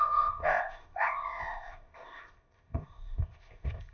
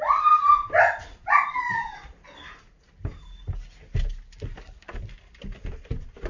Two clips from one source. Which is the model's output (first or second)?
first